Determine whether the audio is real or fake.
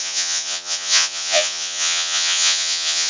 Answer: fake